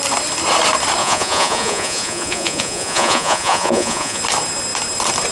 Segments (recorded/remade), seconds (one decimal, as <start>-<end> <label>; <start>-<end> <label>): 0.0-1.0 recorded; 1.0-4.2 remade; 4.2-5.3 recorded